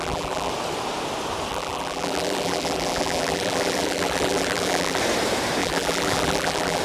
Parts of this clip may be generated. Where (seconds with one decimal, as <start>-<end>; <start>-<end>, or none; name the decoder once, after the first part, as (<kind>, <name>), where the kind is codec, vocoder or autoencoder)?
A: 0.0-0.5 (vocoder, BigVGAN v2); 1.5-5.0; 5.6-6.8